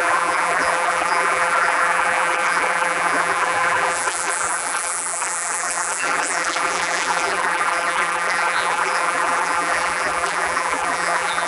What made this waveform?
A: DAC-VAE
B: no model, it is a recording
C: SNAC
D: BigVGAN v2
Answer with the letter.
D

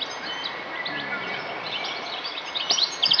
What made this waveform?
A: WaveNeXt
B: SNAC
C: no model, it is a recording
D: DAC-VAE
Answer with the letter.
C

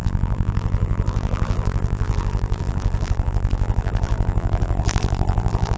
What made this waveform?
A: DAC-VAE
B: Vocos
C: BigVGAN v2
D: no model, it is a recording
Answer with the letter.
C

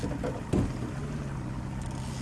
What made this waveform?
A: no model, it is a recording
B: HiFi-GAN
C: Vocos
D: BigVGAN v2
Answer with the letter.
A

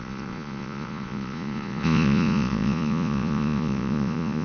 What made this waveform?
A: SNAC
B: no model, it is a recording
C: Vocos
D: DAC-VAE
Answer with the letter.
C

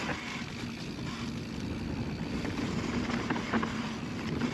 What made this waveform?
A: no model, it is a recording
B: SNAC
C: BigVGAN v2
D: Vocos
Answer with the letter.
A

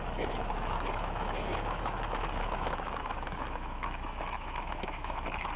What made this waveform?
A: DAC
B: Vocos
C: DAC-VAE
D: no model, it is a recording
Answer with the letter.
C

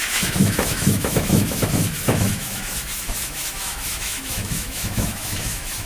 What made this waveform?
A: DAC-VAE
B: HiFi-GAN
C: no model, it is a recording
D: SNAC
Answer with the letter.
A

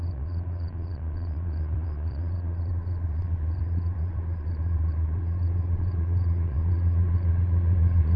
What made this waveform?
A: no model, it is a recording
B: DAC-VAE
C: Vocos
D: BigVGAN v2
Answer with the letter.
C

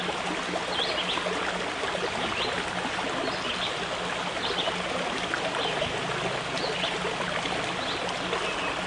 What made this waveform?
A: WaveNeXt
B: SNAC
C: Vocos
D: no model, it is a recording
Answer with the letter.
D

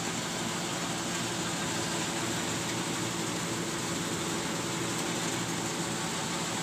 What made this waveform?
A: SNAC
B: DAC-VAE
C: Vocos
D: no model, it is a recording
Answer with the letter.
D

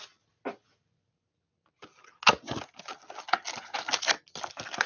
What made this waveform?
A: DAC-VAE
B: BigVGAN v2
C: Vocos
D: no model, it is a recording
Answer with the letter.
D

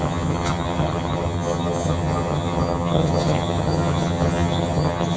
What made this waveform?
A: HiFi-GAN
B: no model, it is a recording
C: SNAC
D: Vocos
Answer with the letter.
A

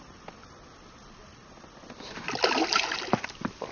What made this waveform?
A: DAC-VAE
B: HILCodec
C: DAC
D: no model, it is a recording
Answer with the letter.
D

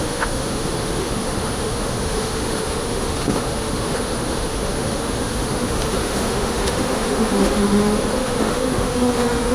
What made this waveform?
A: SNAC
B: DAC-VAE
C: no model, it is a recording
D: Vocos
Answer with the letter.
B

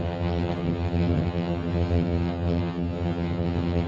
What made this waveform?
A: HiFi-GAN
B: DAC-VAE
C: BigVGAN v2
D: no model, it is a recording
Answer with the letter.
A